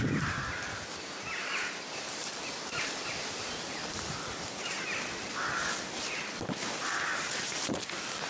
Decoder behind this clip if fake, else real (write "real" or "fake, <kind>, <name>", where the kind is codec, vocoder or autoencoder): real